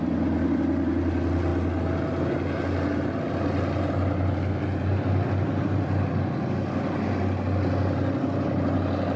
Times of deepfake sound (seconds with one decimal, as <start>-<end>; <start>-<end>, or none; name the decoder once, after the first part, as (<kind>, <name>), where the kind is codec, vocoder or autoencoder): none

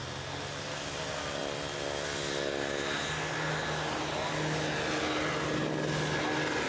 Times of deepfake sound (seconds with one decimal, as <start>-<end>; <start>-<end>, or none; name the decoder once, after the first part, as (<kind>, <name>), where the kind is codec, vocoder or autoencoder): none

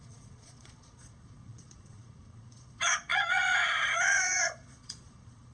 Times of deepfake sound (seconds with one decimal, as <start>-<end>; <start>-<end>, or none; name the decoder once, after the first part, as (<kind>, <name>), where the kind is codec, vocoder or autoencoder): 0.0-5.5 (vocoder, Vocos)